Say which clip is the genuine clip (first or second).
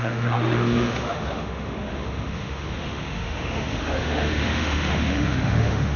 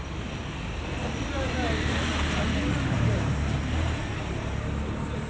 second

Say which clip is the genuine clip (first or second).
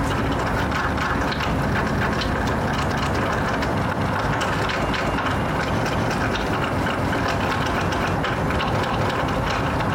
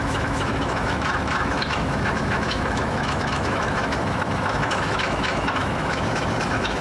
first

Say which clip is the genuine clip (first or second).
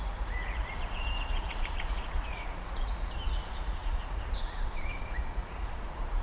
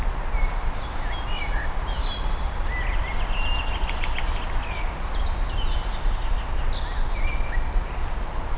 second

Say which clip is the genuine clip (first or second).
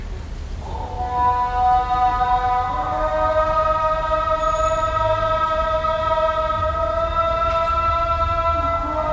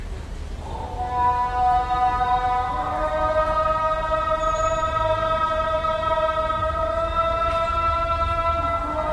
first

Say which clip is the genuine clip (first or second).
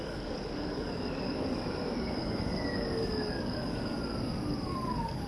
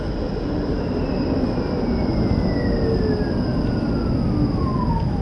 second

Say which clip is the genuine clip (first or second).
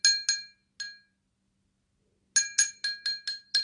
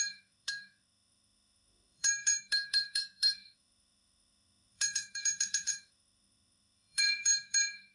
first